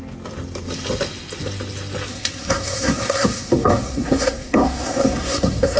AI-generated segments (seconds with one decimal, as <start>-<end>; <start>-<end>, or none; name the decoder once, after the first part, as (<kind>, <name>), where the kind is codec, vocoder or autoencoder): 2.1-5.8 (codec, SNAC)

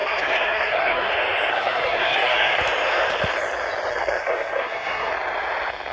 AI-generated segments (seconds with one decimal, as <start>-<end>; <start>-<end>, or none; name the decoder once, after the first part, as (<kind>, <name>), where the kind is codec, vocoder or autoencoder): 0.0-1.1 (codec, SNAC); 1.5-2.6; 3.9-5.1

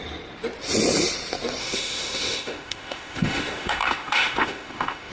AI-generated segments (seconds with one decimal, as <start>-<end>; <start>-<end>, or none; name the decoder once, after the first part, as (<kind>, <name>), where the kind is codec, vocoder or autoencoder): 1.6-5.1 (autoencoder, DAC-VAE)

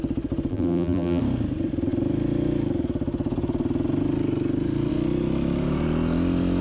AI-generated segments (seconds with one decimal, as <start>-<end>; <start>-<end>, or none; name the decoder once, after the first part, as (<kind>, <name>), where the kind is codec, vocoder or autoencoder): 0.5-1.2 (vocoder, BigVGAN v2)

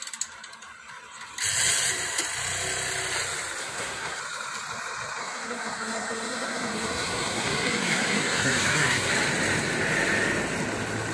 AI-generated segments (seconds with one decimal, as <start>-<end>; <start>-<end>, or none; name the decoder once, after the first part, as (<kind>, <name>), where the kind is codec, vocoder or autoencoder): 3.6-4.2 (codec, SNAC); 5.2-9.1

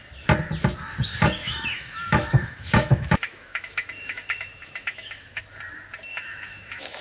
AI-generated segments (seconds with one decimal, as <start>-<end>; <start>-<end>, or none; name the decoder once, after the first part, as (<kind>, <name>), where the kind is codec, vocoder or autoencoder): 1.4-5.4 (autoencoder, DAC-VAE); 6.1-7.0